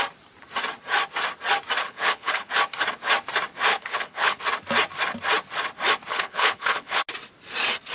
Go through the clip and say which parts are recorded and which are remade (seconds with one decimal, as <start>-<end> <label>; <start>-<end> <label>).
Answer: 0.0-1.8 recorded; 1.8-2.5 remade; 2.5-3.7 recorded; 3.7-4.4 remade; 4.4-6.1 recorded; 6.1-7.0 remade; 7.0-7.9 recorded

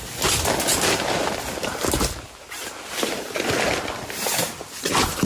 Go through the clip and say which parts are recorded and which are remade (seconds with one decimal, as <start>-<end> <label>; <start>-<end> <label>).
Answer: 0.0-5.3 recorded

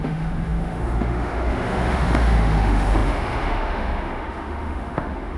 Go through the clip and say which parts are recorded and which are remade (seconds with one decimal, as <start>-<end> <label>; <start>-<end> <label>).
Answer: 0.0-5.4 remade

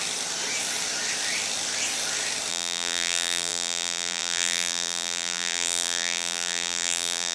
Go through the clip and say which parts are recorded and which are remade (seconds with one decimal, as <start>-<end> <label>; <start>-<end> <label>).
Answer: 0.0-2.5 recorded; 2.5-7.3 remade

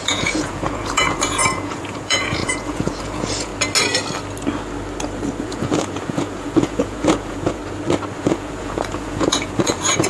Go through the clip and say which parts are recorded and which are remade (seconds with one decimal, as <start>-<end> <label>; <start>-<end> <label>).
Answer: 0.0-3.5 remade; 3.5-5.4 recorded; 5.4-7.6 remade; 7.6-8.2 recorded; 8.2-10.1 remade

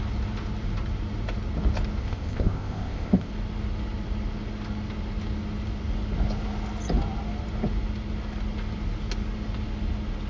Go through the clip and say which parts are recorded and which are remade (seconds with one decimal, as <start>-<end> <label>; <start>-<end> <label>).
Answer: 0.0-2.0 recorded; 2.0-3.3 remade; 3.3-10.3 recorded

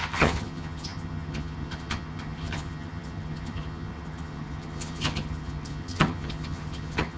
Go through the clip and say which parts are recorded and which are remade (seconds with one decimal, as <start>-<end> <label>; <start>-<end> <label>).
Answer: 0.0-7.2 remade

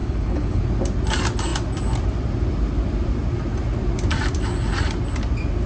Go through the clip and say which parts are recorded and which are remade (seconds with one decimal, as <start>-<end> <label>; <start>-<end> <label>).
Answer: 0.0-0.6 remade; 0.6-5.7 recorded